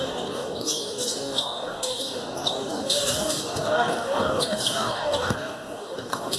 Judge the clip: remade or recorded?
remade